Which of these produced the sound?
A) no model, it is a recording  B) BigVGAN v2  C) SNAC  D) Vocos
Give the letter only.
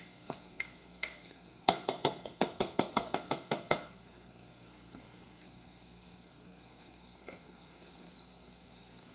C